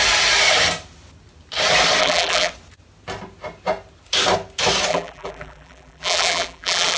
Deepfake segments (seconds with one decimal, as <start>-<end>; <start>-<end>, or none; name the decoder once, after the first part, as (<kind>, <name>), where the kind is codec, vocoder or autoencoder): 2.0-2.5 (vocoder, BigVGAN v2); 4.9-7.0